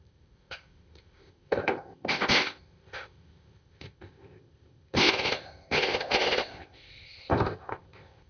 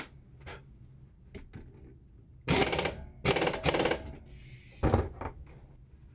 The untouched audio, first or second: second